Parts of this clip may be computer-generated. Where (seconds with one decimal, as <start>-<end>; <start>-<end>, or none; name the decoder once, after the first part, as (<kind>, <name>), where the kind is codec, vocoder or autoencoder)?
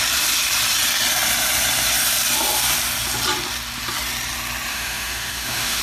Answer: 4.7-5.8 (autoencoder, DAC-VAE)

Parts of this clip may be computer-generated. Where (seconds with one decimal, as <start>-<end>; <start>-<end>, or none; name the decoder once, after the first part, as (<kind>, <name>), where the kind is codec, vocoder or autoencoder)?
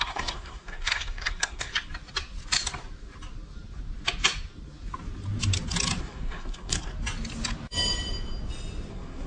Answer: 0.0-1.7 (codec, SNAC); 6.0-6.9; 8.9-9.3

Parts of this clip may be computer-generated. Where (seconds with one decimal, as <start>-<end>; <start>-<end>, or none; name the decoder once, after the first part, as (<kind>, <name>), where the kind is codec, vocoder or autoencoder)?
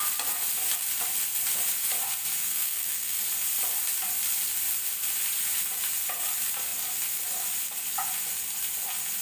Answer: 2.4-3.2 (codec, SNAC)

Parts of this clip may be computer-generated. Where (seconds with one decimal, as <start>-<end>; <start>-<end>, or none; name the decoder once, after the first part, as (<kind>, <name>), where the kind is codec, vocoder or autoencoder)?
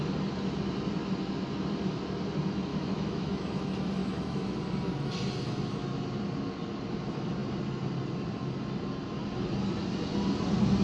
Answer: 2.7-3.6 (autoencoder, DAC-VAE); 4.0-4.6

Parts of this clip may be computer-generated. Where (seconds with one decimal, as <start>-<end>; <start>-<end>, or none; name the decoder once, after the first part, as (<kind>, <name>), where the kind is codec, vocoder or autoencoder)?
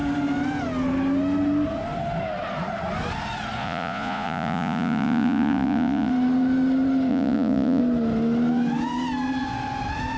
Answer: 3.6-6.1 (vocoder, Vocos); 7.1-7.8